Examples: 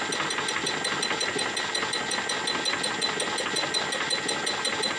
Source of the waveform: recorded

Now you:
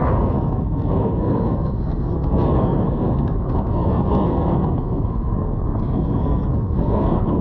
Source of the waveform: remade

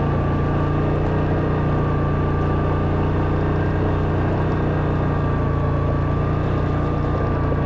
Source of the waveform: recorded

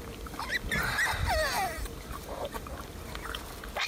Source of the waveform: remade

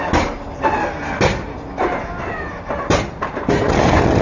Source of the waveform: recorded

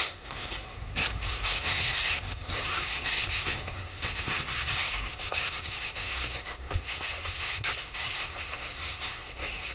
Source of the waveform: remade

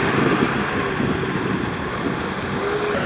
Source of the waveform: recorded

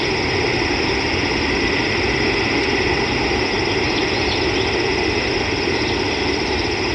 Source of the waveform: recorded